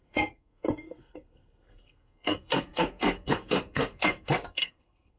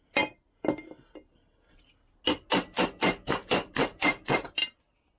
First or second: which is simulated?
first